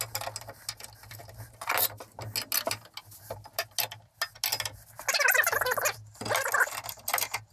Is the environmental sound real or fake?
real